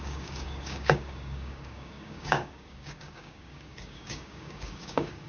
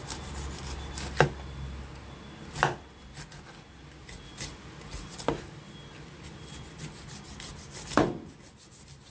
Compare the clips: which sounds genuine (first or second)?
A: second